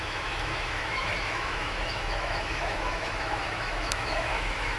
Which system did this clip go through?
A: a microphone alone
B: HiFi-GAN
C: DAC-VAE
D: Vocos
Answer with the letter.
C